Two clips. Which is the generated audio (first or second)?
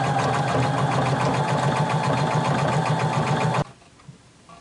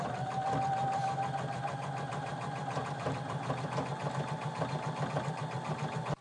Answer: second